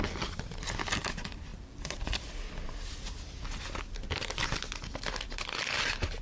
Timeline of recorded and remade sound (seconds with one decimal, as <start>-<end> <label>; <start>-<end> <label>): 0.0-6.2 recorded